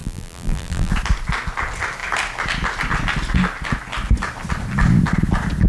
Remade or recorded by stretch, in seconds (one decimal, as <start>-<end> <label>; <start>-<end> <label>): 0.0-0.9 remade; 0.9-5.7 recorded